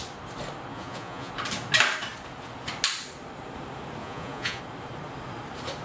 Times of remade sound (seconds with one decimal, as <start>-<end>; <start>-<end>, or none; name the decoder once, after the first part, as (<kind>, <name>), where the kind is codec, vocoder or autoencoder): 0.7-1.3 (vocoder, Vocos); 4.0-4.6